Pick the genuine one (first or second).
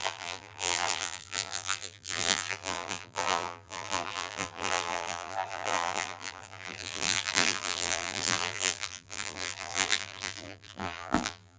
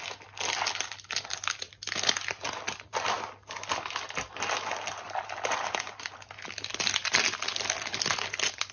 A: second